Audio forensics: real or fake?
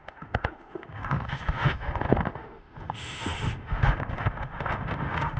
fake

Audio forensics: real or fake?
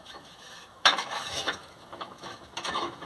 fake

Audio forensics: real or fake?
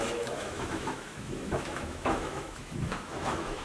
fake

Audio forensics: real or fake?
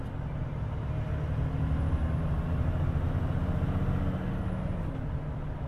real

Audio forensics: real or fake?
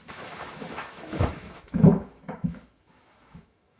fake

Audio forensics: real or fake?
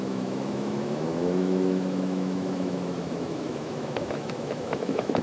fake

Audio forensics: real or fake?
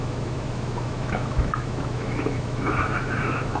fake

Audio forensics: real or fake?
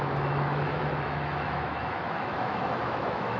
fake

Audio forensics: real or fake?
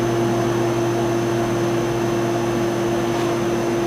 real